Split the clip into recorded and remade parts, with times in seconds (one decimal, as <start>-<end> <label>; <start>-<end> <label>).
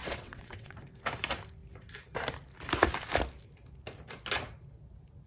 0.0-0.8 remade; 0.8-5.3 recorded